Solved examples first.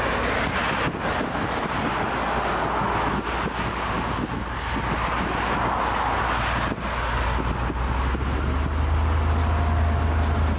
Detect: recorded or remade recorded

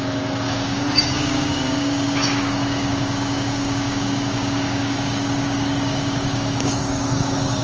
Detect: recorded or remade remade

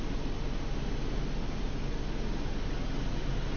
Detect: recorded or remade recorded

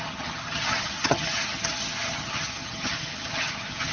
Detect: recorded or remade remade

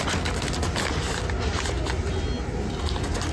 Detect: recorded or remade recorded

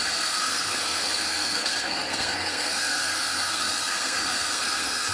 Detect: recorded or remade remade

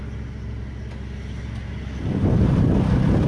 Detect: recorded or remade recorded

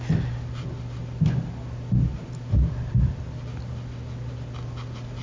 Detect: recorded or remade recorded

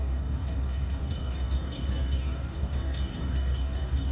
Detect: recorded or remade remade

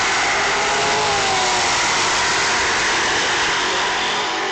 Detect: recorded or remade recorded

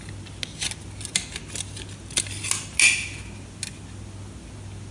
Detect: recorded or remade recorded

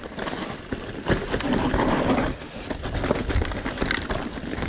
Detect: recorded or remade recorded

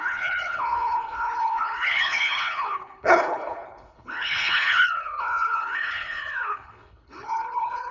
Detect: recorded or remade remade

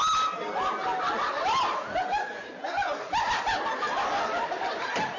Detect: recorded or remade recorded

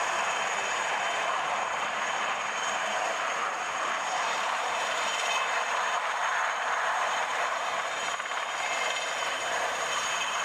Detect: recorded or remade remade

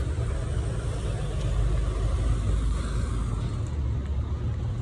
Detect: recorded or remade recorded